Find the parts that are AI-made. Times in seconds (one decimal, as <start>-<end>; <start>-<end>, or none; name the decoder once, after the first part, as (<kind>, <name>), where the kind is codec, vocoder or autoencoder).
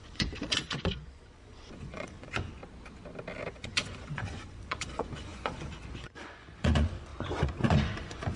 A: 0.0-2.6 (vocoder, Vocos); 3.5-8.4